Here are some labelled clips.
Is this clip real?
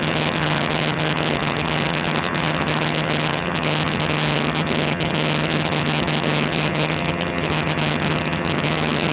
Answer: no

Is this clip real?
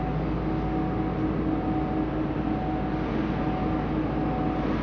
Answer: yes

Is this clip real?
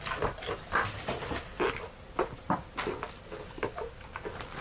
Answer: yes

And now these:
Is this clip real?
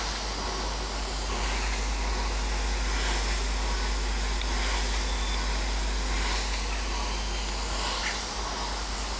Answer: yes